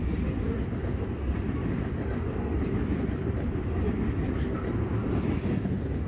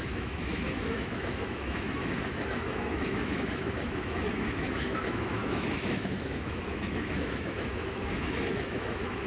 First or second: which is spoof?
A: second